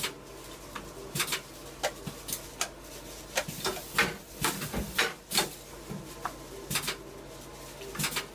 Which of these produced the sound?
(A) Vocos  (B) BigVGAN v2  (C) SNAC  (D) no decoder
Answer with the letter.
D